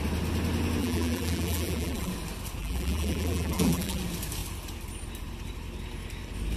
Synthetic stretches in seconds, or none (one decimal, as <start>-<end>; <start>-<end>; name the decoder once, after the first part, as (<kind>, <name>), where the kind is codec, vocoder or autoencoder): 0.8-2.1 (vocoder, BigVGAN v2); 2.6-4.0